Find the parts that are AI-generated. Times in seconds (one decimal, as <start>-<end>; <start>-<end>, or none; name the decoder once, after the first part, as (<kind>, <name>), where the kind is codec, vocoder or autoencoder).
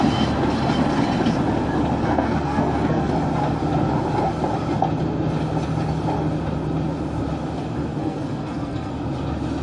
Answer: 2.0-3.1 (codec, SNAC); 8.0-8.9